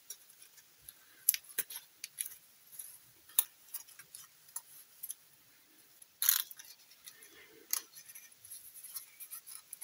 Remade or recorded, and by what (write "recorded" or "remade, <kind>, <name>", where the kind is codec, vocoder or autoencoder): recorded